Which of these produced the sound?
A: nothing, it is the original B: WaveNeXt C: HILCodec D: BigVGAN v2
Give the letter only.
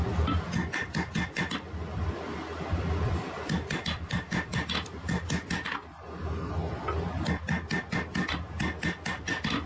A